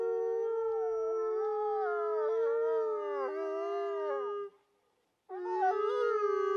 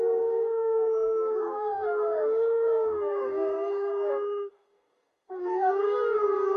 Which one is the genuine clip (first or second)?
first